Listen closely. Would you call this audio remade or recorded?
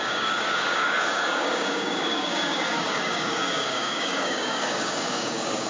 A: remade